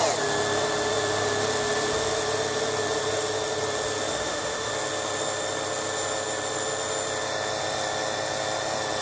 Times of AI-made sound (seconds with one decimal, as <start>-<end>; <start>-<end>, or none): 4.1-4.7